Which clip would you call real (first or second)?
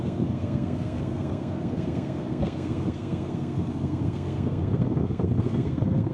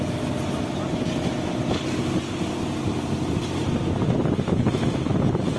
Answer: second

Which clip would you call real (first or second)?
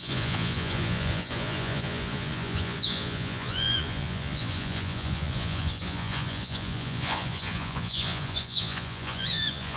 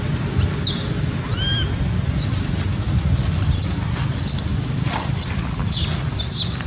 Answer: second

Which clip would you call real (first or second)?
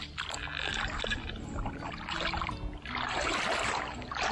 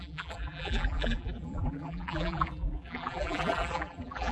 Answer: first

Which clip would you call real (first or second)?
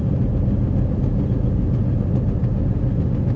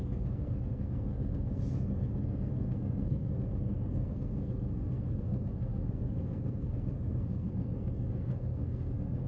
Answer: first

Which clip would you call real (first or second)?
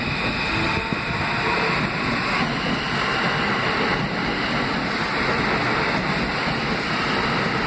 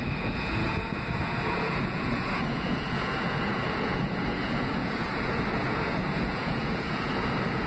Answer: first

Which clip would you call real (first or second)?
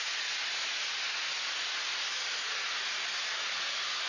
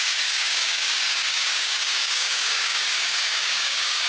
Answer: first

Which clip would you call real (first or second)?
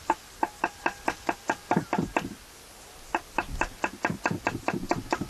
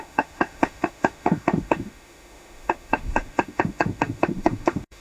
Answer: first